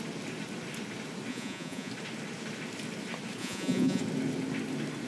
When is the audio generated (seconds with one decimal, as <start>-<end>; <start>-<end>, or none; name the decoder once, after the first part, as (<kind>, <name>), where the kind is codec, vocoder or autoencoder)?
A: 1.3-1.9 (vocoder, Vocos); 3.4-4.0